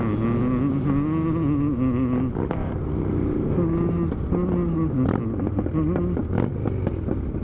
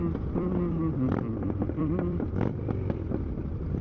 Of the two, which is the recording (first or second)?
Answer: first